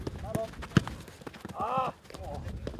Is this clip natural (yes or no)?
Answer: yes